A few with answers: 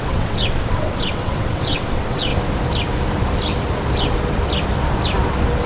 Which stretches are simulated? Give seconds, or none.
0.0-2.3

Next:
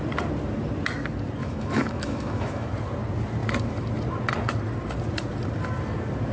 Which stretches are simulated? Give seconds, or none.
1.4-2.7

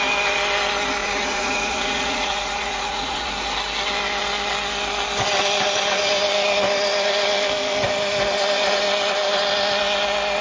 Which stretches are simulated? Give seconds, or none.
1.0-3.3

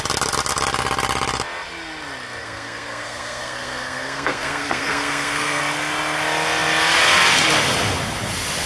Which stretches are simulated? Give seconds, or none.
2.4-5.6